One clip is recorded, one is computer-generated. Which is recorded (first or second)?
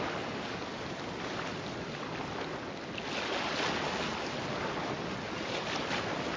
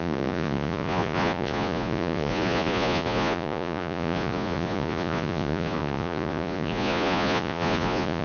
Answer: first